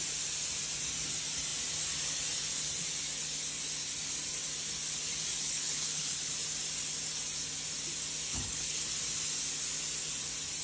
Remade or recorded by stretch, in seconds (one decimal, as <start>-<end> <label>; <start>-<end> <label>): 0.0-5.4 recorded; 5.4-6.3 remade; 6.3-8.3 recorded; 8.3-8.8 remade; 8.8-10.6 recorded